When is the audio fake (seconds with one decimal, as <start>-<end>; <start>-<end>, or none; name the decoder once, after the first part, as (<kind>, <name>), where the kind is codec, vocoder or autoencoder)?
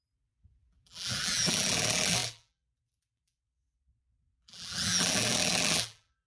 0.0-6.3 (vocoder, BigVGAN v2)